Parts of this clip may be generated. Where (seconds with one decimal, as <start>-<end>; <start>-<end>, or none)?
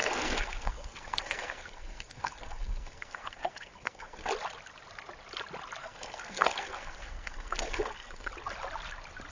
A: 0.0-4.3; 5.8-8.3